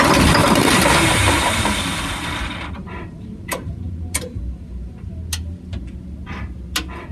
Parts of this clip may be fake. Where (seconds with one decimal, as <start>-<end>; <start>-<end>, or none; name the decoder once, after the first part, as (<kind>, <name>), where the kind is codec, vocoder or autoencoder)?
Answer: 0.4-4.4 (vocoder, BigVGAN v2)